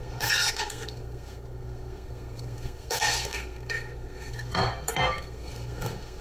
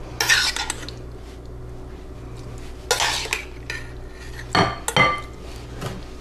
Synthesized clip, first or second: first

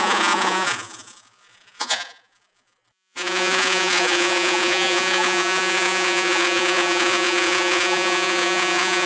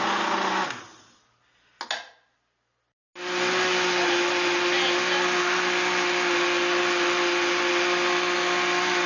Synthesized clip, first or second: first